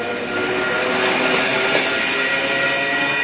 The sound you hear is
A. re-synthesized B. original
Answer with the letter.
B